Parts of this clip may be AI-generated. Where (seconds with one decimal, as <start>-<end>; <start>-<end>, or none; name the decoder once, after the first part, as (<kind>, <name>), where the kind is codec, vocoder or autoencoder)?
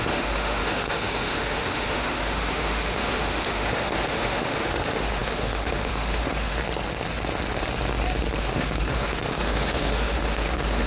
0.0-6.6 (autoencoder, DAC-VAE); 8.4-10.9